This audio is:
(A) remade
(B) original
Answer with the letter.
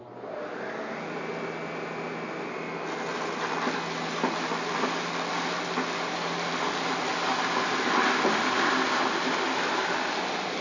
B